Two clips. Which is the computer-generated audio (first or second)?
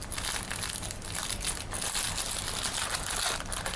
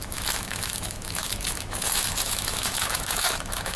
second